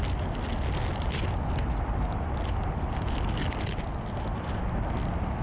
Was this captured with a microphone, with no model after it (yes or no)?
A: yes